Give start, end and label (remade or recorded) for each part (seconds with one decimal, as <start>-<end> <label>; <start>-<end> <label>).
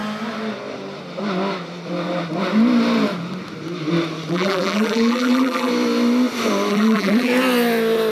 0.0-4.3 recorded; 4.3-5.7 remade; 5.7-6.7 recorded; 6.7-7.3 remade; 7.3-8.1 recorded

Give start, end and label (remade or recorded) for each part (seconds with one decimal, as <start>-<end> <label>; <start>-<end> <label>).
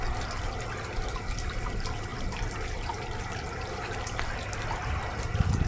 0.0-5.7 recorded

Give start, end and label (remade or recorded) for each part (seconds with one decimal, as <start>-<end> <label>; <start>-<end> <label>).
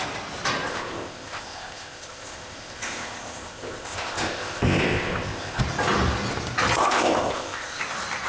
0.0-0.7 recorded; 0.7-5.6 remade; 5.6-6.8 recorded; 6.8-7.8 remade; 7.8-8.3 recorded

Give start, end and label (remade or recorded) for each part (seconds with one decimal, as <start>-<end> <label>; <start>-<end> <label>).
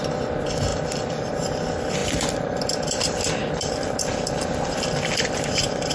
0.0-0.7 recorded; 0.7-1.3 remade; 1.3-2.0 recorded; 2.0-5.5 remade; 5.5-5.9 recorded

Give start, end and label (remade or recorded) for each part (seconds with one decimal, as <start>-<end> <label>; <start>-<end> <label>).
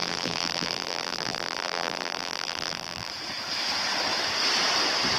0.0-3.1 remade; 3.1-5.2 recorded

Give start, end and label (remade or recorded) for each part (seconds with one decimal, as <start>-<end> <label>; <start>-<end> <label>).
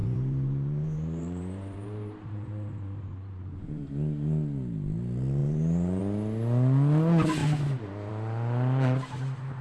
0.0-3.9 remade; 3.9-5.4 recorded; 5.4-6.0 remade; 6.0-9.6 recorded